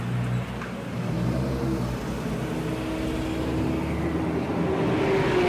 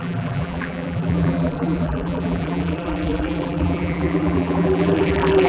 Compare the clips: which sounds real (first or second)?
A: first